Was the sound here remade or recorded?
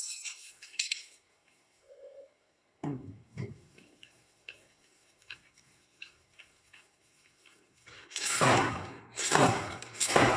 remade